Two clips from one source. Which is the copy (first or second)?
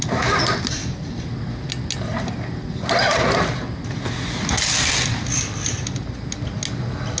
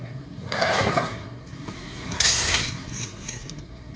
second